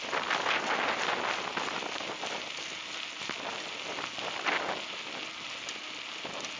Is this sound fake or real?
real